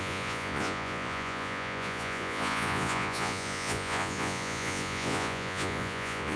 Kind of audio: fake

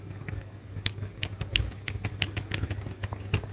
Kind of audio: fake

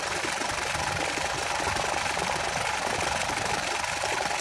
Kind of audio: fake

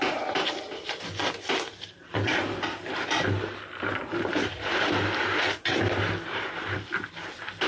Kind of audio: real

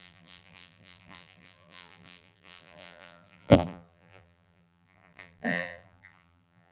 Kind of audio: fake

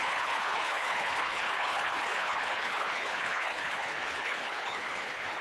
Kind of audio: fake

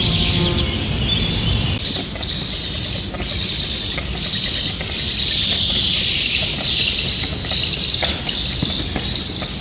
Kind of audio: real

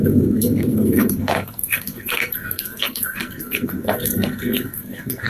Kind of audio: fake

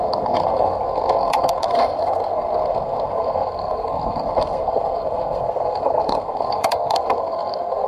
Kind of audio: fake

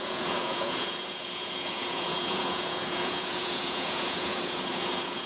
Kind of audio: fake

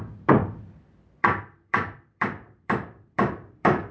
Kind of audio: fake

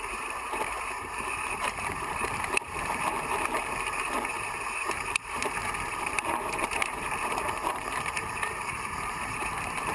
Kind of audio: fake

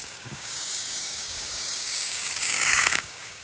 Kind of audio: fake